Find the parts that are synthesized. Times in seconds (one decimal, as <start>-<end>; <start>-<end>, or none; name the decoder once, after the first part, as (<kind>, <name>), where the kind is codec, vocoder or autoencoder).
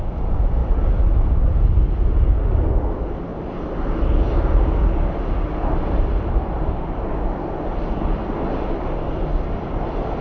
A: none